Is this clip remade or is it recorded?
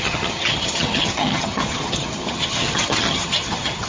remade